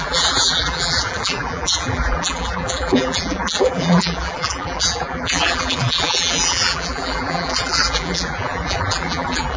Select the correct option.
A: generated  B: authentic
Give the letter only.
A